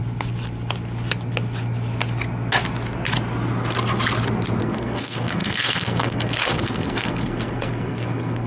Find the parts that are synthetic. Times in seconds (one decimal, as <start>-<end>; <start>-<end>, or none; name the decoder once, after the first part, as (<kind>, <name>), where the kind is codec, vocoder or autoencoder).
4.6-8.5 (codec, SNAC)